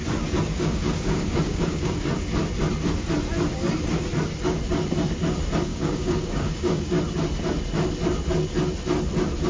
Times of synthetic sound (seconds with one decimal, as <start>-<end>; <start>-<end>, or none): 0.5-1.9; 5.7-7.0